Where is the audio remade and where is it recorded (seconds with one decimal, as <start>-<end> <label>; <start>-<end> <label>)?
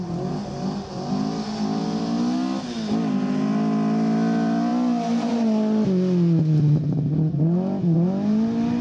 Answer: 0.0-8.8 recorded